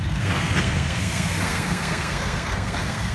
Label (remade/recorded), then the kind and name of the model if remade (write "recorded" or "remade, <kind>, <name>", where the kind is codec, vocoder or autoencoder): remade, codec, SNAC